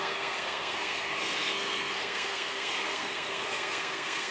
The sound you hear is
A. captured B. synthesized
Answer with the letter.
B